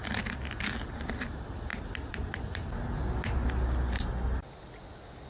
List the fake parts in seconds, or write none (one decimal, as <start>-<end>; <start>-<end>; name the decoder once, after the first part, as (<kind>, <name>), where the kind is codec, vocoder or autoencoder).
none